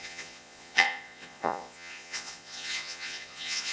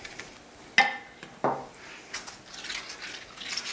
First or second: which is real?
second